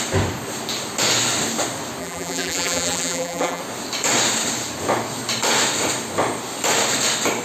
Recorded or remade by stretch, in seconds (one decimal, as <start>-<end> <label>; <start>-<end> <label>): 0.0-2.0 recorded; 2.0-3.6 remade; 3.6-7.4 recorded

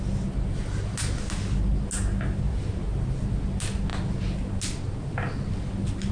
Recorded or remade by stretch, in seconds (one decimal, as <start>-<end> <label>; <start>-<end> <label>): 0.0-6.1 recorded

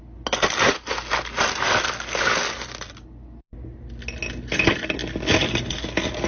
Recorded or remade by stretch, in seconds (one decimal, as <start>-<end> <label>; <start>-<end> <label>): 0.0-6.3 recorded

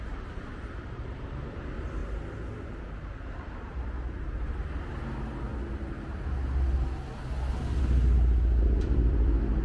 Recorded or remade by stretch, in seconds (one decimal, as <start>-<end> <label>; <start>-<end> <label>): 0.0-2.0 remade; 2.0-3.4 recorded; 3.4-5.5 remade; 5.5-7.8 recorded; 7.8-9.6 remade